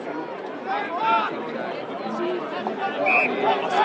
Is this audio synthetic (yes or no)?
no